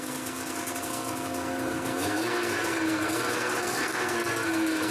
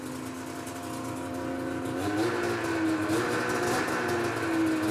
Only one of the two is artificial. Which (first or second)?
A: first